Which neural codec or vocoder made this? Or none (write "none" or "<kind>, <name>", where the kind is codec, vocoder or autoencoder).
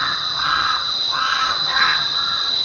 vocoder, HiFi-GAN